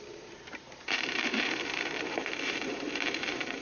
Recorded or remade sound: remade